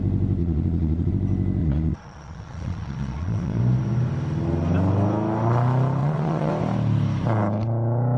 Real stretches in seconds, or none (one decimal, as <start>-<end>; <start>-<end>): 0.0-0.4; 1.1-1.6; 3.6-6.0; 6.5-8.2